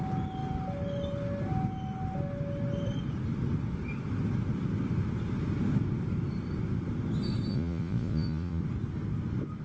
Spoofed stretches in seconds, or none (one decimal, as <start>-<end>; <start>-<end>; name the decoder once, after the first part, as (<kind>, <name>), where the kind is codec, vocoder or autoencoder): 7.5-8.6 (vocoder, Vocos)